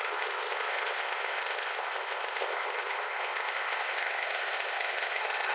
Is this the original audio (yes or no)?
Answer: no